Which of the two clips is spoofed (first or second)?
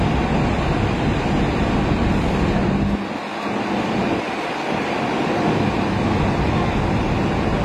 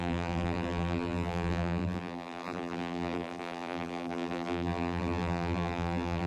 second